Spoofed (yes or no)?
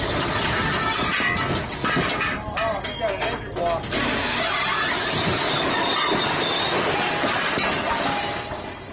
no